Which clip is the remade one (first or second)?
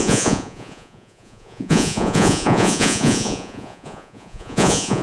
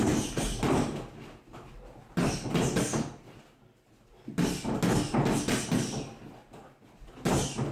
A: first